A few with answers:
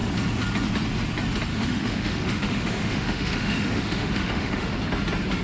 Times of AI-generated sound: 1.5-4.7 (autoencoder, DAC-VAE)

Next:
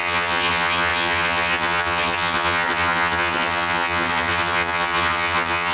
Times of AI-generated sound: 0.0-5.7 (vocoder, HiFi-GAN)

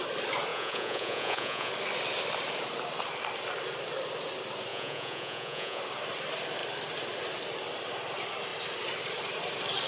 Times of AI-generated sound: 0.5-1.7 (vocoder, Vocos); 4.7-5.8

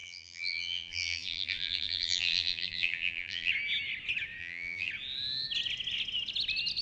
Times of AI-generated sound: 0.0-3.5 (vocoder, BigVGAN v2); 4.4-4.9

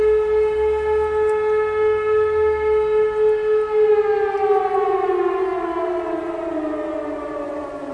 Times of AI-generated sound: none